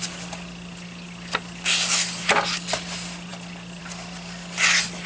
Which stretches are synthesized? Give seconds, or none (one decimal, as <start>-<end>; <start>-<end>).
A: none